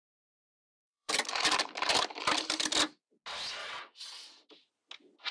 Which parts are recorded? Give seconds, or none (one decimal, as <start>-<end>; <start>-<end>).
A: 0.0-0.5; 1.1-3.6; 4.5-5.3